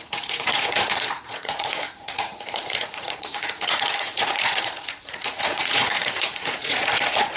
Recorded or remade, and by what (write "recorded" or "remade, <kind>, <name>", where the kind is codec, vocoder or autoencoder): remade, vocoder, Vocos